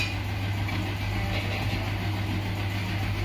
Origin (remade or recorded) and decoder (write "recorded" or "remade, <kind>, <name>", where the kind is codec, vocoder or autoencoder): recorded